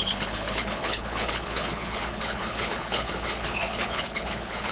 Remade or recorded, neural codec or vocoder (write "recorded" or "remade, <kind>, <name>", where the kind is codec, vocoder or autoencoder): remade, codec, HILCodec